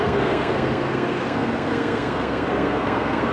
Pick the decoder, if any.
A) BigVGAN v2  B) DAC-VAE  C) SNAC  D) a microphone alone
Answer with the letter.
C